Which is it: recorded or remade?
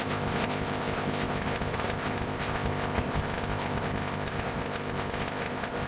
remade